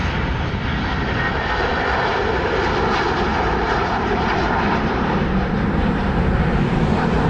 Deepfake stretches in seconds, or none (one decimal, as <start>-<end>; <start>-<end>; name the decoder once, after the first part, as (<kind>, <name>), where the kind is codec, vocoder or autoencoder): 3.3-7.3 (vocoder, BigVGAN v2)